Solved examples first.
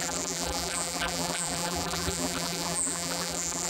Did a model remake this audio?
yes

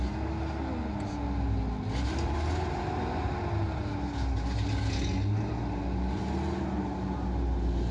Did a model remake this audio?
no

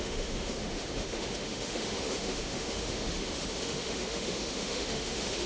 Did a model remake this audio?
yes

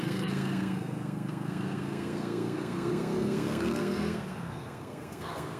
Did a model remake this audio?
yes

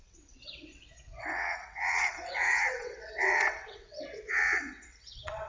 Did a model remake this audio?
yes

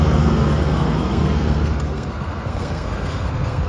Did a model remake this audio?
yes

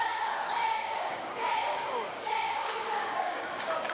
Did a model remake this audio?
yes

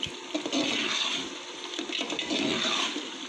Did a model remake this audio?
no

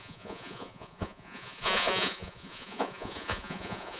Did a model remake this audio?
yes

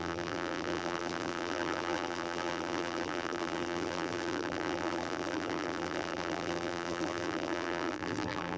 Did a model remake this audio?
yes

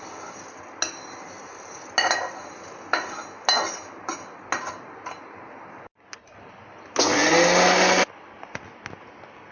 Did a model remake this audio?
no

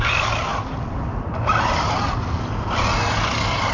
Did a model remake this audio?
no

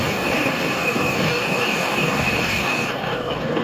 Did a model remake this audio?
yes